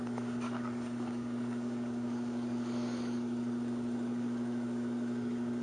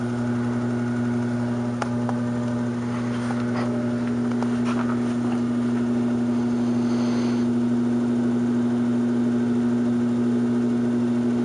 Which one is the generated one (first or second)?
first